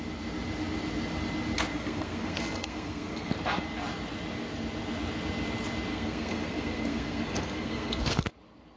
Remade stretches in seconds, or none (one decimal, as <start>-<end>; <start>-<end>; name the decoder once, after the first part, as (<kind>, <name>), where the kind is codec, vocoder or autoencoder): 1.7-3.3 (codec, SNAC); 5.9-8.3